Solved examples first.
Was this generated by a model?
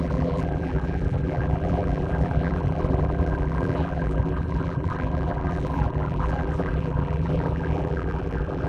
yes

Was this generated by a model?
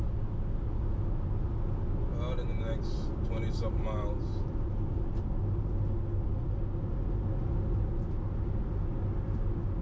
no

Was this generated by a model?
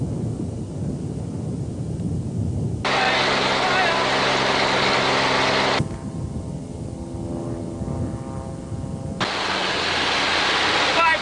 no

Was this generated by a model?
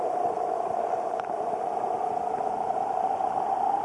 no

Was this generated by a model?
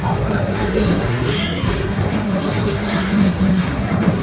yes